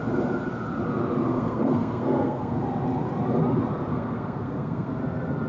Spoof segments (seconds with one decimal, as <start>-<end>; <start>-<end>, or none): 1.3-2.6; 3.9-5.0